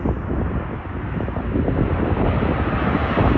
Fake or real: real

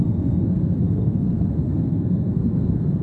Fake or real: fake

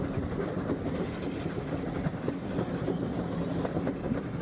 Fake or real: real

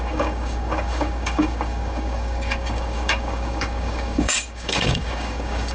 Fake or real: fake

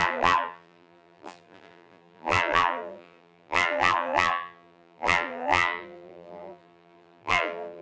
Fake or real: fake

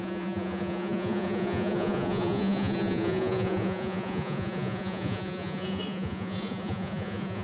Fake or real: fake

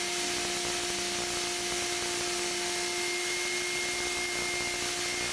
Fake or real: real